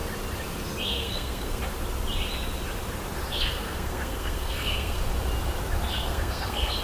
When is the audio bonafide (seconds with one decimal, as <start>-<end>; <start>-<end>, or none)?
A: 0.0-0.8; 1.6-3.3; 5.0-5.9